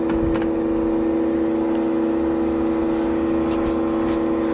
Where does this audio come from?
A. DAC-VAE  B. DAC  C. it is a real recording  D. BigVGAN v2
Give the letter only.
C